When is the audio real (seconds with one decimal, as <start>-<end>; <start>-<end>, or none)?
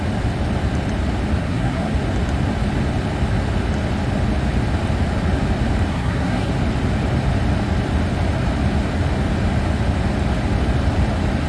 0.0-1.4; 1.9-5.9; 6.5-11.5